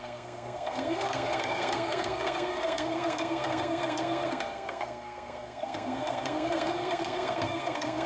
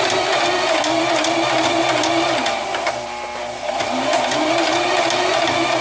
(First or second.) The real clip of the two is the second